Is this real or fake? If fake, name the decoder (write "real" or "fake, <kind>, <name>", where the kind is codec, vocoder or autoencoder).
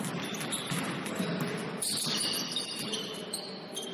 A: real